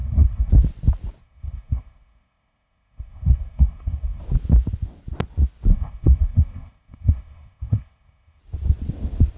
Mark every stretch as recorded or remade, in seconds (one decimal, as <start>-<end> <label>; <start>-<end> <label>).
0.0-0.5 remade; 0.5-1.2 recorded; 1.2-4.2 remade; 4.2-5.7 recorded; 5.7-8.4 remade; 8.4-9.4 recorded